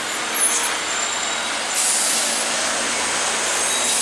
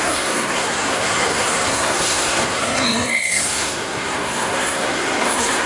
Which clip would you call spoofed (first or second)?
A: second